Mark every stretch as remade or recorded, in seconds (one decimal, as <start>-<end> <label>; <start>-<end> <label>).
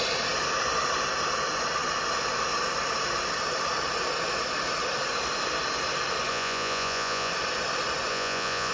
0.0-6.3 recorded; 6.3-7.3 remade; 7.3-8.1 recorded; 8.1-8.7 remade